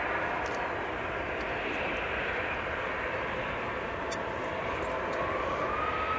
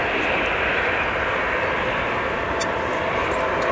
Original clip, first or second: second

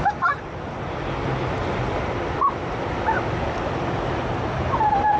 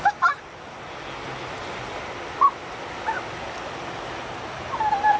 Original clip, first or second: second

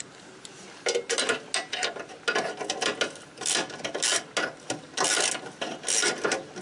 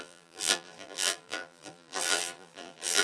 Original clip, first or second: first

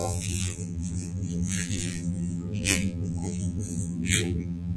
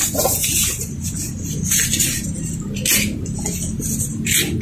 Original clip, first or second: second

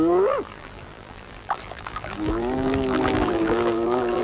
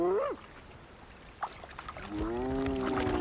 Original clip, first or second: second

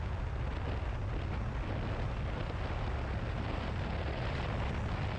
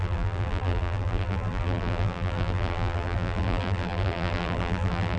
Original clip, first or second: first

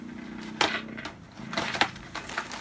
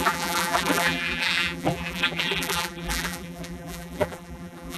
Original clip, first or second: first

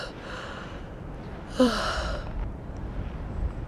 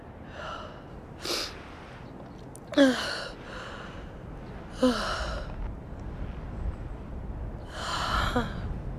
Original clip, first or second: second